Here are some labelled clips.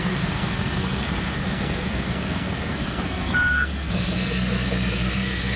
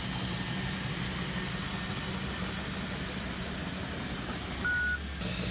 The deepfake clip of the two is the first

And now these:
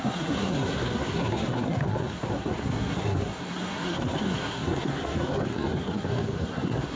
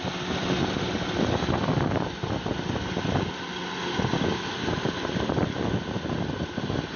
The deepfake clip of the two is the first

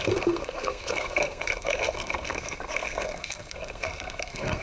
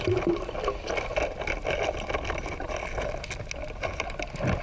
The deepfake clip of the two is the first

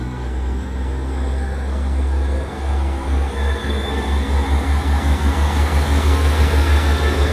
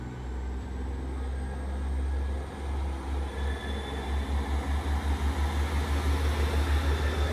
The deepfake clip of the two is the first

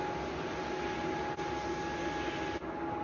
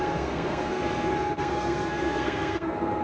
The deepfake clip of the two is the second